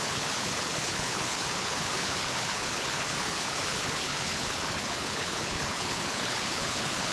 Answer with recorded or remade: remade